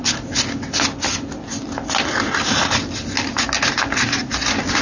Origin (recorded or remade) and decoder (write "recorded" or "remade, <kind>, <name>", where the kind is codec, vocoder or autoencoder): recorded